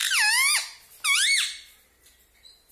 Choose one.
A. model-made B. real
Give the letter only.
B